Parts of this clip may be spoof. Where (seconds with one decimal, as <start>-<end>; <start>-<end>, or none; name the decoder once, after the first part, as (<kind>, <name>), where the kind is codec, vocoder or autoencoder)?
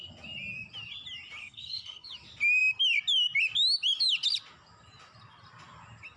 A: 1.4-2.1 (codec, SNAC)